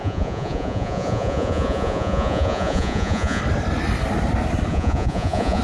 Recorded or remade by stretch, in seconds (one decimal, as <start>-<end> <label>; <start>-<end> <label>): 0.0-3.4 remade; 3.4-4.7 recorded; 4.7-5.6 remade